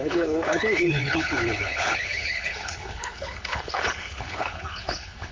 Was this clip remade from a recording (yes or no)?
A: yes